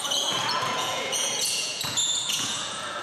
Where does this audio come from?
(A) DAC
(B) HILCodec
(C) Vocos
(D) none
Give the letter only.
C